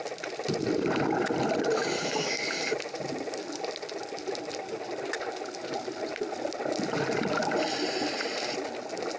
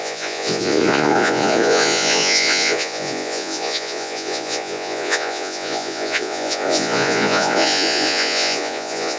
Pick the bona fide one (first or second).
first